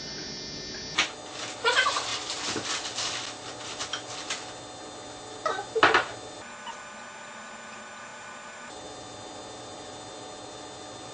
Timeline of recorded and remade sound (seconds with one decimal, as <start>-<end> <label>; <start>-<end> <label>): 0.0-11.1 recorded

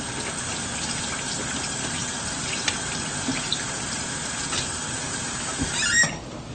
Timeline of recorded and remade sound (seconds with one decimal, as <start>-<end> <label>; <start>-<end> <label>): 0.0-6.5 recorded

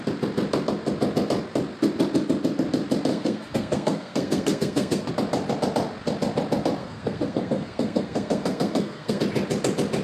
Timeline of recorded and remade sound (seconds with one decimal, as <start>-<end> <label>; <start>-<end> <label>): 0.0-3.1 recorded; 3.1-5.1 remade; 5.1-6.8 recorded; 6.8-9.2 remade; 9.2-10.0 recorded